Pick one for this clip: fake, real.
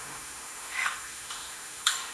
fake